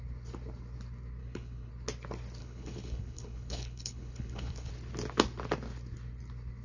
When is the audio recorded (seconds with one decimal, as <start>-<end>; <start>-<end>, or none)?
0.0-1.2; 1.7-2.4; 4.7-6.6